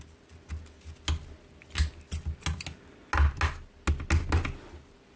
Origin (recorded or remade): recorded